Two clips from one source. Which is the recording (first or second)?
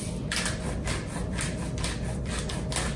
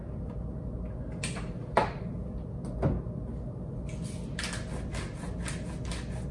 second